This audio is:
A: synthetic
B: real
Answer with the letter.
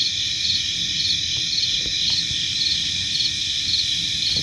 B